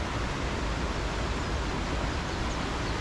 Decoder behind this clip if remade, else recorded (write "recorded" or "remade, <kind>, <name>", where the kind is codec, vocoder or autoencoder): recorded